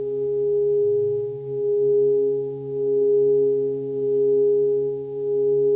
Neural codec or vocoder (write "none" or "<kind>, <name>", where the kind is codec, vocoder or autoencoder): codec, DAC